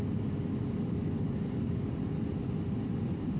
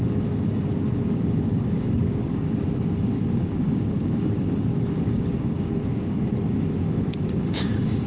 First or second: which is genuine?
first